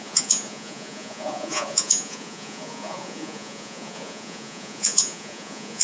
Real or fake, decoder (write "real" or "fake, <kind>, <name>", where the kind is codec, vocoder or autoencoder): fake, vocoder, Vocos